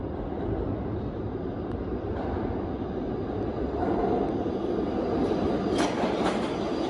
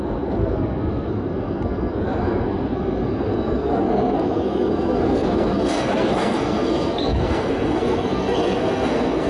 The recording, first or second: first